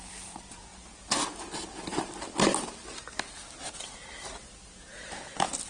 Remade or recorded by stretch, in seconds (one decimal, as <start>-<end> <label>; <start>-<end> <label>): 0.0-5.7 recorded